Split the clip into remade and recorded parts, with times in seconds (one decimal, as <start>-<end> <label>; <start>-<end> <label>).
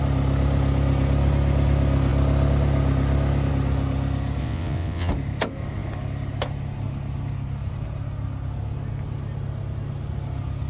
0.0-4.4 recorded; 4.4-5.1 remade; 5.1-10.7 recorded